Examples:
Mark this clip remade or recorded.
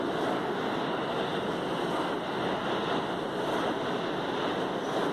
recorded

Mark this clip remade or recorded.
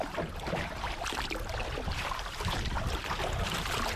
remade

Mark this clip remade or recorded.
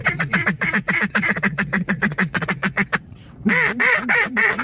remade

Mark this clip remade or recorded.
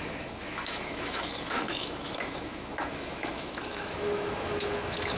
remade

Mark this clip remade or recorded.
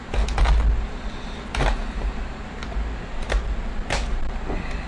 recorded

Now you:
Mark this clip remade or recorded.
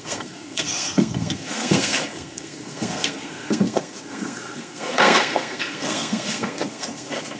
remade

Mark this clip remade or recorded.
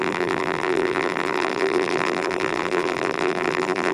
remade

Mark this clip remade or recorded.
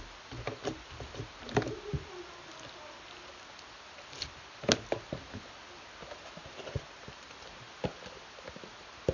recorded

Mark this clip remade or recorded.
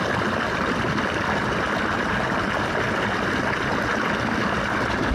recorded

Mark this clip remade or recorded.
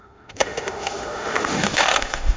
remade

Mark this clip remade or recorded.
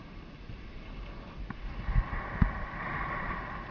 remade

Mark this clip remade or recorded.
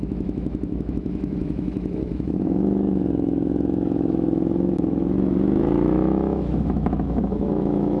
remade